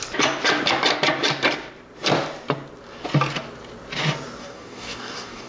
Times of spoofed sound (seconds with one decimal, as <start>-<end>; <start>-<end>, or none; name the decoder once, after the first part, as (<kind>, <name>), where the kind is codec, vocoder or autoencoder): 4.4-5.5 (codec, DAC)